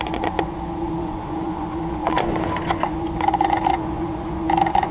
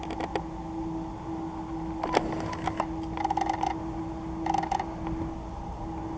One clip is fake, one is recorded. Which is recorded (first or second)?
second